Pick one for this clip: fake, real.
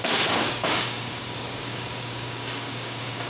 fake